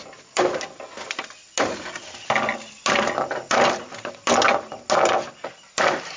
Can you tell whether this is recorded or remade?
recorded